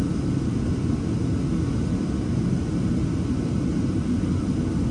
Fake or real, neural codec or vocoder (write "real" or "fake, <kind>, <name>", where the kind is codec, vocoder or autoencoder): real